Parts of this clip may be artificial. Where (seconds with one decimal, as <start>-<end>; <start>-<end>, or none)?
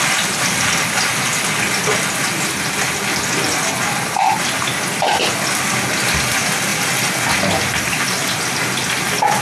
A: none